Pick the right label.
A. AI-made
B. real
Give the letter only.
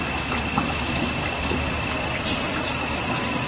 B